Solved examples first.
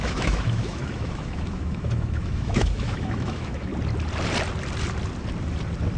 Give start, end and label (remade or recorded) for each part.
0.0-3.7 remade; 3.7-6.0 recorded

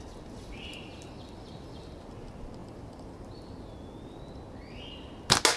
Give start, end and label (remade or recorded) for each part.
0.0-2.6 recorded; 2.6-4.2 remade; 4.2-5.6 recorded

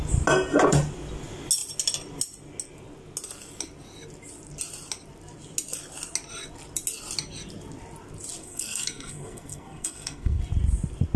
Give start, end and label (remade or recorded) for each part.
0.0-8.4 recorded; 8.4-10.4 remade; 10.4-11.2 recorded